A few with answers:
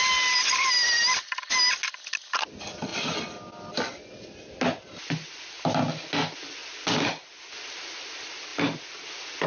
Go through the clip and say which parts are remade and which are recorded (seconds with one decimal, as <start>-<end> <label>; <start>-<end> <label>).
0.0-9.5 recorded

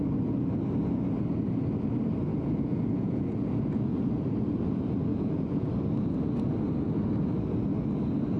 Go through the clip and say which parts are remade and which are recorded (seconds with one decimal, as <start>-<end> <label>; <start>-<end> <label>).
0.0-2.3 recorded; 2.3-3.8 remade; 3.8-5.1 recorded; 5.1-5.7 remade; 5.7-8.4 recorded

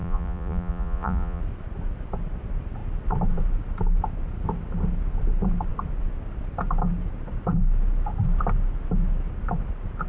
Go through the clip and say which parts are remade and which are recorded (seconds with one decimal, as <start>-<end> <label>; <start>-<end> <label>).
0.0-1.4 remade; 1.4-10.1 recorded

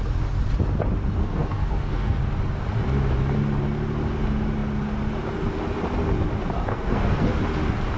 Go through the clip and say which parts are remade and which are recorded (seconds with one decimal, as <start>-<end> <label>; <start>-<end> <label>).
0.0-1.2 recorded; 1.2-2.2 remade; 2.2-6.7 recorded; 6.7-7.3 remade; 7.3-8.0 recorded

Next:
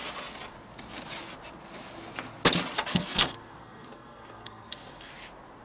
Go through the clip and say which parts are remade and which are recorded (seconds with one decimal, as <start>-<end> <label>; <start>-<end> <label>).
0.0-2.9 recorded; 2.9-5.1 remade; 5.1-5.6 recorded